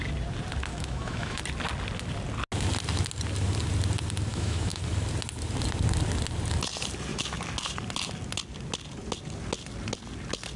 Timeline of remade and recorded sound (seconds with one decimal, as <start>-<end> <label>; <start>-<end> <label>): 0.0-0.7 recorded; 0.7-1.4 remade; 1.4-4.3 recorded; 4.3-4.8 remade; 4.8-10.6 recorded